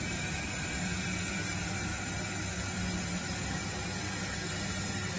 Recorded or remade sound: recorded